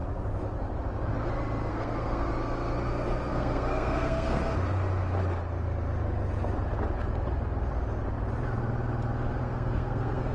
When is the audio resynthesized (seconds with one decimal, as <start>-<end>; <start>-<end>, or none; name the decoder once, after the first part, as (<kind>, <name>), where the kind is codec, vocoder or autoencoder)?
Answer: 1.7-2.3 (codec, SNAC); 3.3-4.4; 9.4-10.3